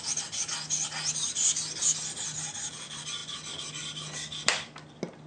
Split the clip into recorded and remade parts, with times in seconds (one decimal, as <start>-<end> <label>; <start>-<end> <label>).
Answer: 0.0-5.3 recorded